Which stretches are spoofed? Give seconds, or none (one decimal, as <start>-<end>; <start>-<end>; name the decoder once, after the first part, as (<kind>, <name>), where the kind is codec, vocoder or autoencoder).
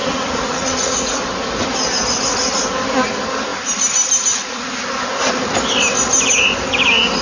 0.0-1.2 (vocoder, Vocos)